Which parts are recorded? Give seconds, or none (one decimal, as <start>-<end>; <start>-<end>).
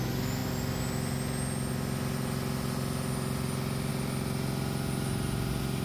0.0-5.8